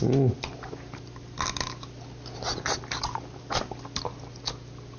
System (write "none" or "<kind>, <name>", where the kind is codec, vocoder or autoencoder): none